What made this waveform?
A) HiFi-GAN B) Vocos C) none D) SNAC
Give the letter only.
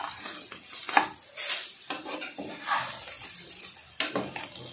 C